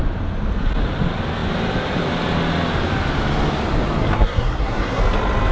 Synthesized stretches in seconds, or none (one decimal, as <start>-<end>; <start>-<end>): 4.1-5.0